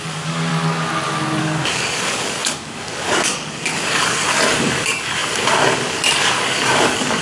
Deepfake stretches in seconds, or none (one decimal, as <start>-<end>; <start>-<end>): 0.0-0.5; 1.4-7.2